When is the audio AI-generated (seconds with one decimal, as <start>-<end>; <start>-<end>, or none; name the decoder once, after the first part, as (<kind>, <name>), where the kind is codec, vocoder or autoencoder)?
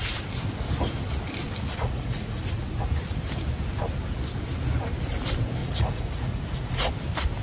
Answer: 1.7-2.4 (vocoder, Vocos); 5.6-6.9